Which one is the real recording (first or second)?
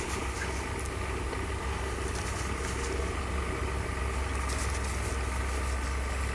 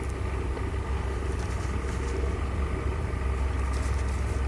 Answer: first